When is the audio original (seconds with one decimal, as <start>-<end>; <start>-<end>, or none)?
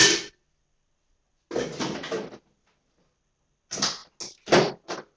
0.0-5.2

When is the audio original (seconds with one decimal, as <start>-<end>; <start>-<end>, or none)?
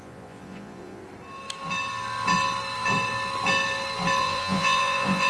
1.0-4.2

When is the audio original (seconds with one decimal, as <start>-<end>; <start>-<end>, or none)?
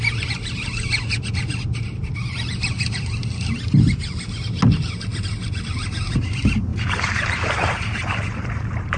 0.0-6.7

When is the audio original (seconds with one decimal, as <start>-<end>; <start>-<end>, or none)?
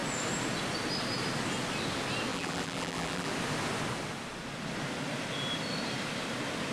0.0-2.3; 3.3-6.7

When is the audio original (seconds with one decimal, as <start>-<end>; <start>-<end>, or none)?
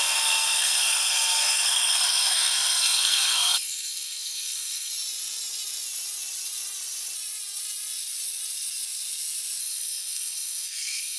4.9-9.6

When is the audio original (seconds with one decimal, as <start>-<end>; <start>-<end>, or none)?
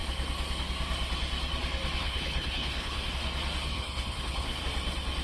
0.0-2.0; 3.1-3.7; 4.6-5.2